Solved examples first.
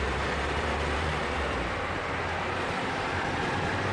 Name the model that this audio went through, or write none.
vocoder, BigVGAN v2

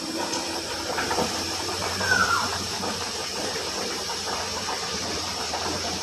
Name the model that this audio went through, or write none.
vocoder, BigVGAN v2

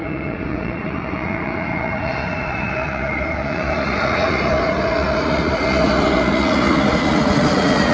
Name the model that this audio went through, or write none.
vocoder, Vocos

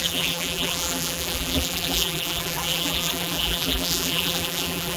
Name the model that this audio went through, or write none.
vocoder, BigVGAN v2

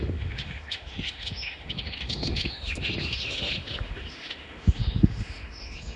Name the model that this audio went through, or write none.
autoencoder, DAC-VAE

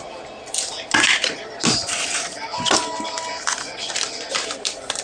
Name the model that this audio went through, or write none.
none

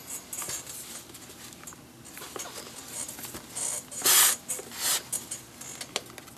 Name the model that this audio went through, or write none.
none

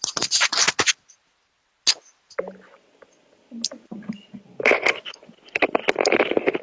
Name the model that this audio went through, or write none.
none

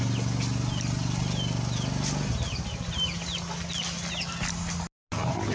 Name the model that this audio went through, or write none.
none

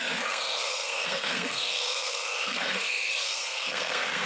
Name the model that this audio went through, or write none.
codec, SNAC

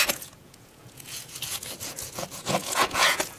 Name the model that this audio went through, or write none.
vocoder, Vocos